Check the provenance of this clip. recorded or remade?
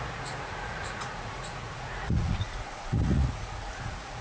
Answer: remade